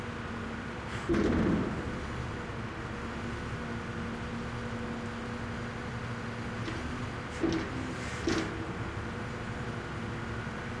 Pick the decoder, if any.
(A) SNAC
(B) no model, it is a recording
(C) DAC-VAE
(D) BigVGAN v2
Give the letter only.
B